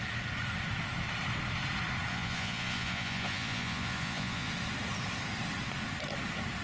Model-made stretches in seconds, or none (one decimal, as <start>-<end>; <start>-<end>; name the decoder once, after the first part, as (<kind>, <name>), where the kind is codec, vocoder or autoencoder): 2.1-4.5 (vocoder, Vocos)